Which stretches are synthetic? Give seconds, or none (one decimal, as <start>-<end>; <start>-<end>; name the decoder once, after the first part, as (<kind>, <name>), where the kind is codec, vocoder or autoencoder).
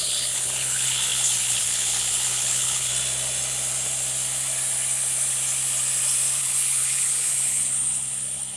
0.0-2.9 (codec, HILCodec); 6.4-8.6